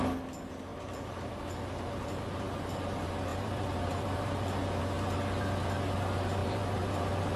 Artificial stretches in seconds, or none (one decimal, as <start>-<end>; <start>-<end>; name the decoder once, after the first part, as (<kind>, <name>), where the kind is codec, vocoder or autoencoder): 0.7-1.4 (vocoder, BigVGAN v2); 3.3-4.3; 6.4-7.0